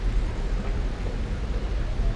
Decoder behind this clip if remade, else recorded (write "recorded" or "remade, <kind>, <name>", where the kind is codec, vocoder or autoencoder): remade, vocoder, BigVGAN v2